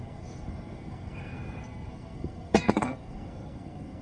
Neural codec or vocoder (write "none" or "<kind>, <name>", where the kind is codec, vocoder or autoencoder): codec, SNAC